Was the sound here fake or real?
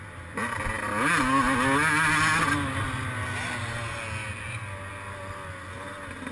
real